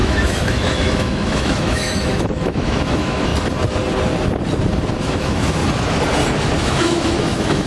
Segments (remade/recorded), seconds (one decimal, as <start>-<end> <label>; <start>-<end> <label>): 0.0-3.3 remade; 3.3-5.0 recorded; 5.0-5.6 remade; 5.6-6.6 recorded; 6.6-7.7 remade